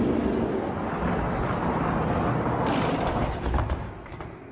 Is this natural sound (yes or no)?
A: yes